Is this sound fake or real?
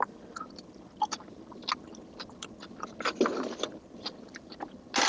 real